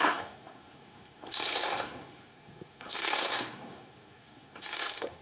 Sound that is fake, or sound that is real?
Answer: fake